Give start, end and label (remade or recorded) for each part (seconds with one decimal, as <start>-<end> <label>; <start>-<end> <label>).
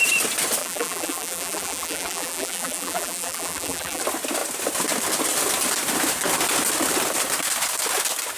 0.0-0.6 recorded; 0.6-4.0 remade; 4.0-8.4 recorded